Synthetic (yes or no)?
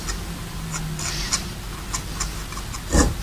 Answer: no